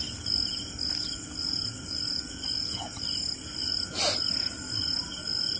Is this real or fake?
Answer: real